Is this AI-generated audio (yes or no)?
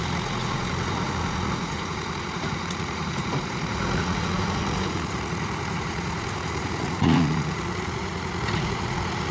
yes